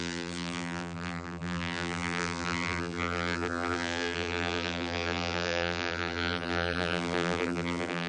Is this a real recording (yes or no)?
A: no